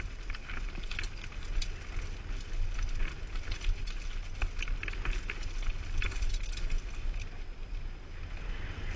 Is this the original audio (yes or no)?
yes